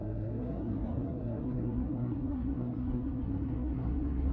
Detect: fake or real fake